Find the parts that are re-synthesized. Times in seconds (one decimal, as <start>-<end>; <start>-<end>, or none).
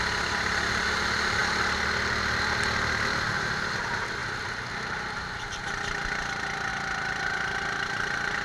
none